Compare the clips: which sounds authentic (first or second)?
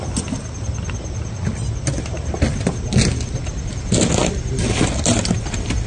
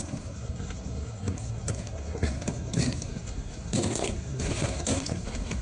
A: first